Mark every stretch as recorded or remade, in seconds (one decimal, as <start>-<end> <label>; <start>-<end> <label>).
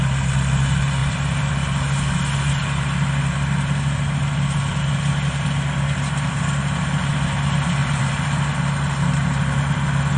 0.0-1.0 recorded; 1.0-1.5 remade; 1.5-7.8 recorded; 7.8-8.5 remade; 8.5-10.2 recorded